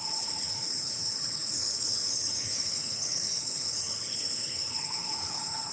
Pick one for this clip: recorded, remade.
remade